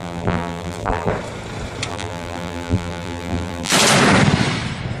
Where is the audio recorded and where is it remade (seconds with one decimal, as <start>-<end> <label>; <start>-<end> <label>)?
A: 0.0-1.1 remade; 1.1-1.9 recorded; 1.9-3.7 remade; 3.7-5.0 recorded